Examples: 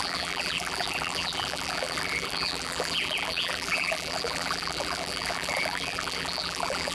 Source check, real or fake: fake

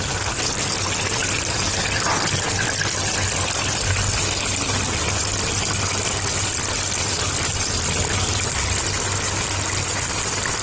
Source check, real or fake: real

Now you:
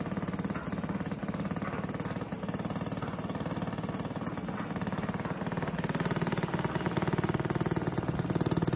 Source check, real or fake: real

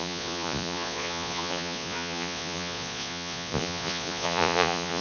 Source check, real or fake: fake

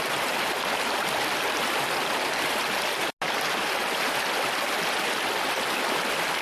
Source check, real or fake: real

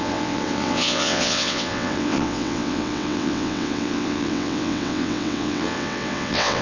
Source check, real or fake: fake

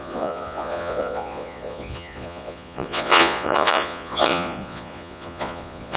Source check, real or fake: fake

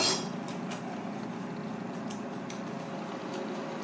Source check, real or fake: real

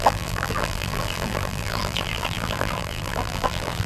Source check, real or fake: fake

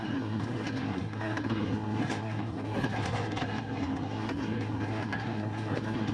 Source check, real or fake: fake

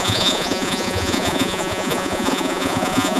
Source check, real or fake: fake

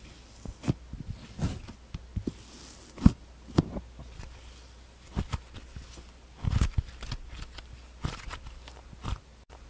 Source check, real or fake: real